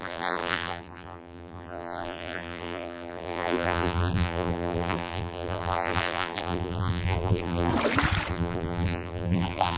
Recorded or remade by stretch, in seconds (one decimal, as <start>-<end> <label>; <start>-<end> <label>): 0.0-7.7 remade; 7.7-8.3 recorded; 8.3-9.8 remade